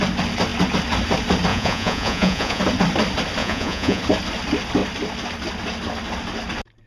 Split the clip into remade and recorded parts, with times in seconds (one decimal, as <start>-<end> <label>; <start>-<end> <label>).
0.0-1.5 recorded; 1.5-2.6 remade; 2.6-3.4 recorded; 3.4-4.0 remade; 4.0-6.9 recorded